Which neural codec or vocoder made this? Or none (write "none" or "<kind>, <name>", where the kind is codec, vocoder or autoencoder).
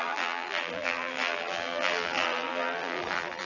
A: vocoder, BigVGAN v2